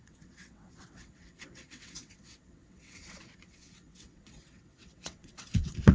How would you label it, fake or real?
fake